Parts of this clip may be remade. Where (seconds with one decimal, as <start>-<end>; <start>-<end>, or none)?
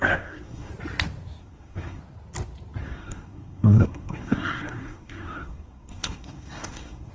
0.0-0.7; 1.4-2.0; 2.8-7.1